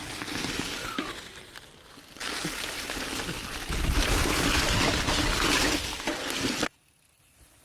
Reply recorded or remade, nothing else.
recorded